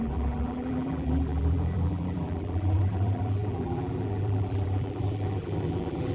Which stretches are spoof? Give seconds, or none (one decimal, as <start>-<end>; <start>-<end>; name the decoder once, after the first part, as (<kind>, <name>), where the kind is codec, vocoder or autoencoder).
0.0-6.1 (vocoder, BigVGAN v2)